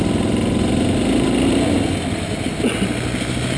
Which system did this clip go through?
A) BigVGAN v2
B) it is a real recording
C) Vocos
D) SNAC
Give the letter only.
B